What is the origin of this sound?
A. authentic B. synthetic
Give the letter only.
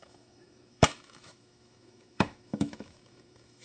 B